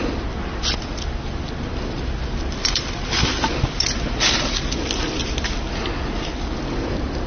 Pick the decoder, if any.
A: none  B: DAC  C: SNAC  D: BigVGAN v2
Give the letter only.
D